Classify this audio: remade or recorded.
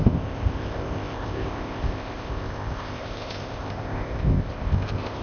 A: remade